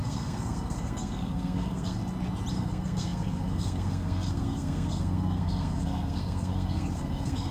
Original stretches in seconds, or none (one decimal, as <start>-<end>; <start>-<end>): 2.0-2.5